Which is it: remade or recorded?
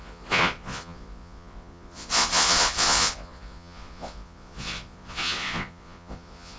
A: remade